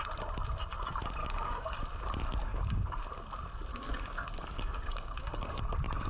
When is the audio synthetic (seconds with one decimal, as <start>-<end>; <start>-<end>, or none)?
1.2-1.8; 2.5-3.0; 3.7-5.6